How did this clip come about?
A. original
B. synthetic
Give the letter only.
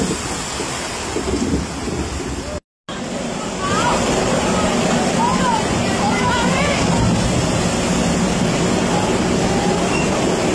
A